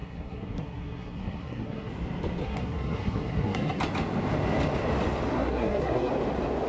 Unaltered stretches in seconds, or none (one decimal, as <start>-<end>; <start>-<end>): 1.9-2.4; 3.8-5.3; 6.1-6.7